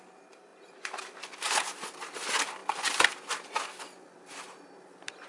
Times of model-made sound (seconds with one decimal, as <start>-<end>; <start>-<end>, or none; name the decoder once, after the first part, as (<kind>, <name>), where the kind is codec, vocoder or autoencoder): none